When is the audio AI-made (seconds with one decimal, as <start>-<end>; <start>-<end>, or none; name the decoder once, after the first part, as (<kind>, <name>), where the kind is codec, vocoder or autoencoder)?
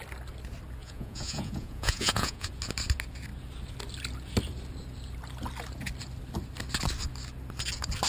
0.8-2.5 (vocoder, Vocos)